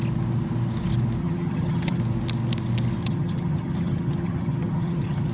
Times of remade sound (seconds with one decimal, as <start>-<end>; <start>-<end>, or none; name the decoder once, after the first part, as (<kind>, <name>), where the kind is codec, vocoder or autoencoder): 1.2-2.0 (vocoder, HiFi-GAN); 3.0-5.3